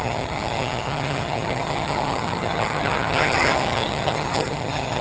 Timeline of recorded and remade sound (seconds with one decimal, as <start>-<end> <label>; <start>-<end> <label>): 0.0-5.0 remade